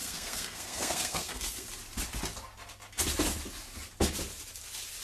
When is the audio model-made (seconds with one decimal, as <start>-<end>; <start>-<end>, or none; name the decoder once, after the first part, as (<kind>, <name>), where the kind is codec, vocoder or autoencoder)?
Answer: 0.0-1.7 (codec, SNAC)

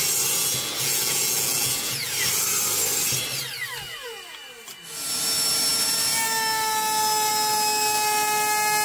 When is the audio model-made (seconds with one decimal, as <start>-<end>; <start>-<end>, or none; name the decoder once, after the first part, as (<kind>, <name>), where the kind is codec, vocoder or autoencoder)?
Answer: 0.4-2.1 (vocoder, Vocos)